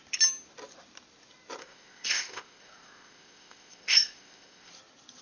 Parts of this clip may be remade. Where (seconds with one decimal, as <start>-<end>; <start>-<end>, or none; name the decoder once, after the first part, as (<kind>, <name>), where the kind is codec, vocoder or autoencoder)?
1.6-4.7 (codec, ZipCodec)